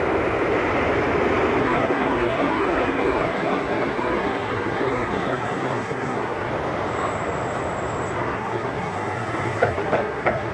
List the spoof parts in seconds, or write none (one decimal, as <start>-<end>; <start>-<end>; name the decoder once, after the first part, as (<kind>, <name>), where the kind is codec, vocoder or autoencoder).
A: 1.6-6.5 (codec, SNAC); 8.2-10.5